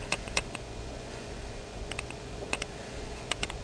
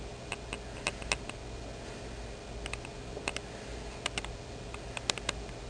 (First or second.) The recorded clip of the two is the second